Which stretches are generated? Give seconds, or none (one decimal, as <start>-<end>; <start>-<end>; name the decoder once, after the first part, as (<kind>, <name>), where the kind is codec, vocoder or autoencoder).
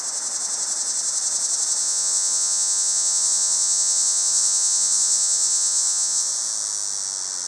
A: 1.8-6.3 (vocoder, Vocos)